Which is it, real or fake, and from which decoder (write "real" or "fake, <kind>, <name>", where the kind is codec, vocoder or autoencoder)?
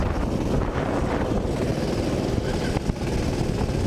real